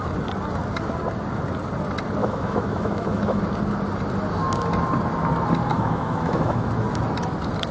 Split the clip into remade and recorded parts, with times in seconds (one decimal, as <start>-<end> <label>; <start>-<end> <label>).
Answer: 0.0-2.2 recorded; 2.2-3.4 remade; 3.4-5.7 recorded; 5.7-6.7 remade; 6.7-7.7 recorded